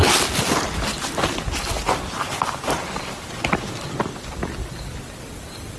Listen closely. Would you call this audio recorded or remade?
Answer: recorded